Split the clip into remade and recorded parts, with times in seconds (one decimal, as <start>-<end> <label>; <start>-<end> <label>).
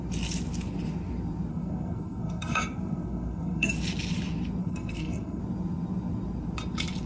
0.0-1.5 recorded; 1.5-3.7 remade; 3.7-4.6 recorded; 4.6-5.4 remade; 5.4-7.1 recorded